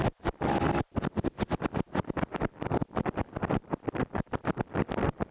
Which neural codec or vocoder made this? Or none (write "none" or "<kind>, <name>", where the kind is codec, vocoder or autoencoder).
none